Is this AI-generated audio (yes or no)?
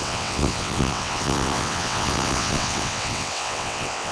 yes